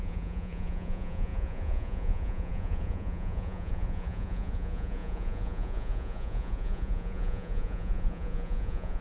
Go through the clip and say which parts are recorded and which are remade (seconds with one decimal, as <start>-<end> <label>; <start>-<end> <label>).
0.0-9.0 remade